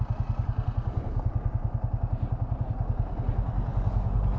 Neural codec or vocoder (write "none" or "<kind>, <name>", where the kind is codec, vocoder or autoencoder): none